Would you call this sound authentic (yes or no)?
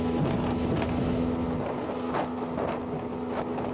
yes